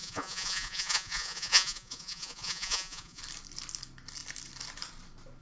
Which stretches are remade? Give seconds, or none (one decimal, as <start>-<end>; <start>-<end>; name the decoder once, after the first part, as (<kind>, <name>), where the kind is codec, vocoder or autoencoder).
0.0-3.2 (vocoder, Vocos)